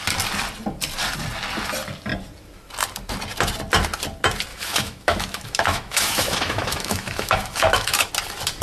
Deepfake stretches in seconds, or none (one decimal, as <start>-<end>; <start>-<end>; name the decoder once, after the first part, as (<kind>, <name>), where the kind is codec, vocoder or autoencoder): 4.5-8.1 (autoencoder, DAC-VAE)